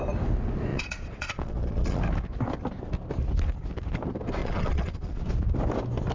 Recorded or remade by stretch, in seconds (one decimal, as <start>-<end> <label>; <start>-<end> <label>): 0.0-0.7 recorded; 0.7-2.0 remade; 2.0-4.4 recorded; 4.4-5.2 remade; 5.2-6.1 recorded